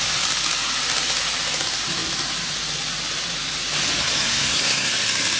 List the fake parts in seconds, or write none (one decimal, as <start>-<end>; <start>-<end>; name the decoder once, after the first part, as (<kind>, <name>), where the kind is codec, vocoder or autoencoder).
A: 4.0-4.9 (codec, SNAC)